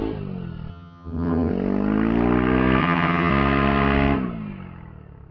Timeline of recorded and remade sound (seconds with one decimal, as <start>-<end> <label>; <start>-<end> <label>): 0.0-0.7 recorded; 0.7-1.5 remade; 1.5-2.8 recorded; 2.8-3.3 remade; 3.3-5.3 recorded